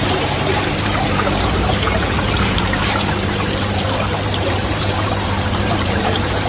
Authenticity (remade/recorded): remade